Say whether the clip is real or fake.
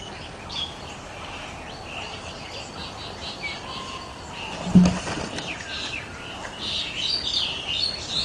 real